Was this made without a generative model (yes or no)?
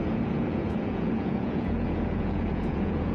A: no